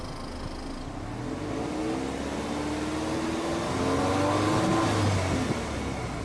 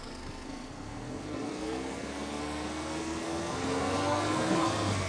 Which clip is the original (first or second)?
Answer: first